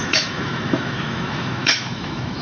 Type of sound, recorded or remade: remade